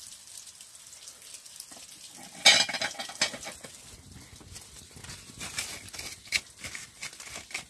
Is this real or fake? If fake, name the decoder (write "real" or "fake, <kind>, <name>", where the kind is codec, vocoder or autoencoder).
real